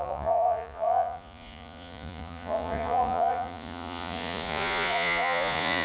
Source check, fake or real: fake